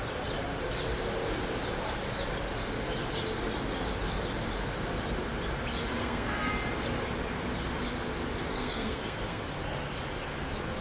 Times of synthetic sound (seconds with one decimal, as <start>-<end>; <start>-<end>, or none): 6.0-6.5; 8.5-9.4